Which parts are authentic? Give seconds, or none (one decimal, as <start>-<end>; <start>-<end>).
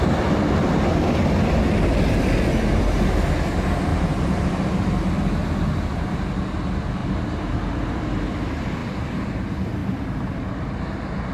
0.0-3.9; 4.5-7.0; 8.2-11.3